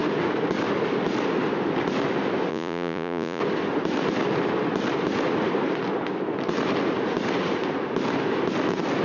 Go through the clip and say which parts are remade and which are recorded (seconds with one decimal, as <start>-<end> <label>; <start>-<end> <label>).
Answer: 0.0-2.5 recorded; 2.5-3.4 remade; 3.4-9.0 recorded